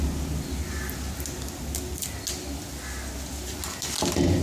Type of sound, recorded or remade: recorded